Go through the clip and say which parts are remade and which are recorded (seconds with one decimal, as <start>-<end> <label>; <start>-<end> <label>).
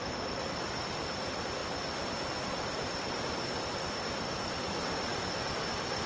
0.0-6.1 recorded